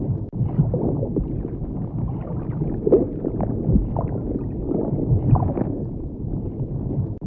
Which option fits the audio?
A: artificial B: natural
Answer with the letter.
B